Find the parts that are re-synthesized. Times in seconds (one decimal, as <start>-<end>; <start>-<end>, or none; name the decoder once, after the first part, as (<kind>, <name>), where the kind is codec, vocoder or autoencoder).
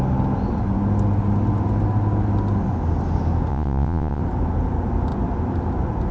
3.5-4.2 (vocoder, Vocos)